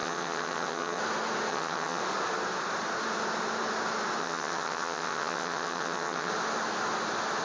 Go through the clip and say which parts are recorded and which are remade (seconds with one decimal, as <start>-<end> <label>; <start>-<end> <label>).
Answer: 0.0-1.0 remade; 1.0-1.5 recorded; 1.5-2.0 remade; 2.0-4.2 recorded; 4.2-6.3 remade; 6.3-7.4 recorded

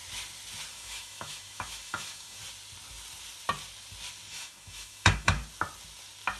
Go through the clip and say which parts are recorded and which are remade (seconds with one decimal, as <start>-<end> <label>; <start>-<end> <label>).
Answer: 0.0-0.7 recorded; 0.7-2.4 remade; 2.4-4.3 recorded; 4.3-5.4 remade; 5.4-6.4 recorded

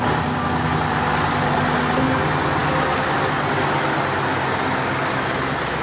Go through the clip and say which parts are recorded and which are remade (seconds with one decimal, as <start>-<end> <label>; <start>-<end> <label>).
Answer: 0.0-5.8 recorded

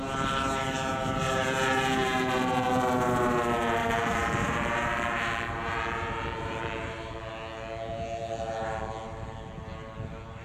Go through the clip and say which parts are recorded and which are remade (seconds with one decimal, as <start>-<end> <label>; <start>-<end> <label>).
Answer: 0.0-3.8 recorded; 3.8-7.3 remade; 7.3-10.4 recorded

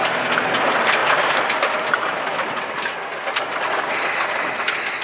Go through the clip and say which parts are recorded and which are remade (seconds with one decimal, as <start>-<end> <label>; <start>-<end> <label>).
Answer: 0.0-5.0 recorded